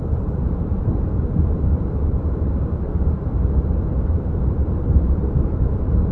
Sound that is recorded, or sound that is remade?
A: remade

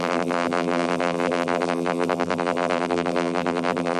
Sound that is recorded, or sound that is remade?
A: remade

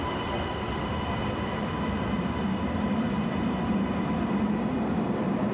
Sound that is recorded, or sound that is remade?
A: recorded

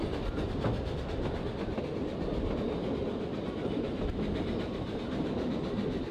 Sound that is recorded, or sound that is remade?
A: recorded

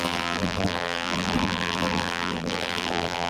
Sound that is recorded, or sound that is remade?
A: remade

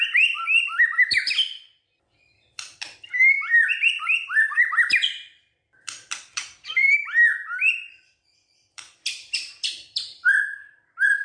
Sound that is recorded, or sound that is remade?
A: remade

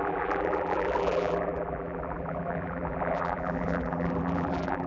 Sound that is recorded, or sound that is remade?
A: remade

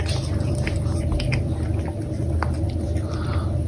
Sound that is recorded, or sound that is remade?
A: recorded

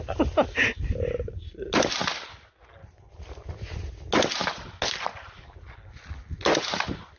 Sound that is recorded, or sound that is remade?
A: recorded